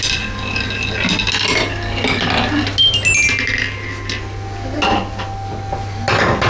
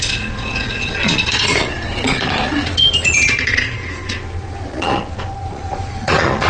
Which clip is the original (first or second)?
first